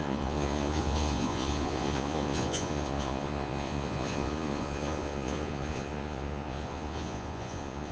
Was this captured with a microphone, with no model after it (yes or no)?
no